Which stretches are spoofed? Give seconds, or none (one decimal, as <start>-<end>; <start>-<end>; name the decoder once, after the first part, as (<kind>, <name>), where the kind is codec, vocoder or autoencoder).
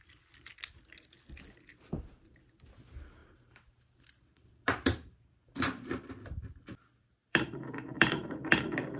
1.7-2.2 (vocoder, BigVGAN v2); 3.2-6.1; 7.2-8.5